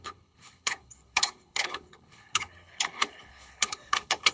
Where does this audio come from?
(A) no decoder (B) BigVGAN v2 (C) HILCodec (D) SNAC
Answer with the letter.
C